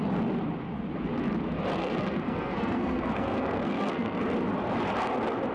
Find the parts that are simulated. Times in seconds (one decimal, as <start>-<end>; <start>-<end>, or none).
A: 1.8-4.2